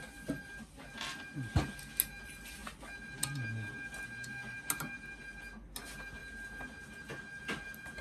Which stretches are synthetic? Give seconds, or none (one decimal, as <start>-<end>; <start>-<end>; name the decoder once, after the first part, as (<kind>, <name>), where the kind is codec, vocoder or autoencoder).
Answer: none